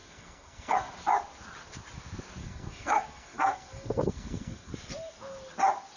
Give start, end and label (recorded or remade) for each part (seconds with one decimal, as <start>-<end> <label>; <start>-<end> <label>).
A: 0.0-0.9 remade; 0.9-2.4 recorded; 2.4-4.7 remade; 4.7-6.0 recorded